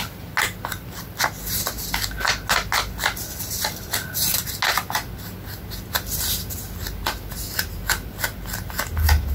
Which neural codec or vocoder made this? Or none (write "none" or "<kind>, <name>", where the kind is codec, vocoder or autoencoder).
none